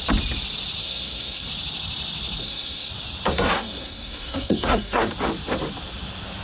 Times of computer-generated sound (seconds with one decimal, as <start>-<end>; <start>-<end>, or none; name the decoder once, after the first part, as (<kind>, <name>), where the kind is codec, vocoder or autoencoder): 0.8-1.5 (codec, SNAC); 2.4-2.9; 3.3-5.1